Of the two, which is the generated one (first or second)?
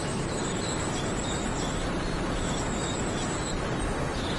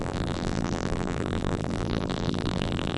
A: second